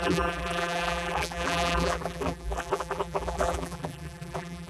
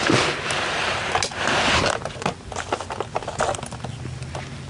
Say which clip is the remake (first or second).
first